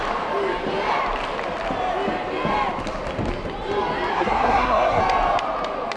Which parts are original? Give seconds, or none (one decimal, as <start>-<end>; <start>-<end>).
0.0-4.1; 5.0-6.0